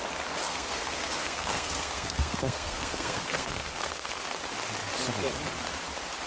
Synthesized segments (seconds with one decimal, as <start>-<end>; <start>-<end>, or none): 0.4-4.2